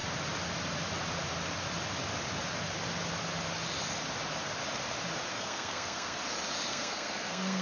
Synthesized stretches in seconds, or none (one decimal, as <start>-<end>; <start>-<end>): 5.3-6.2; 6.7-7.6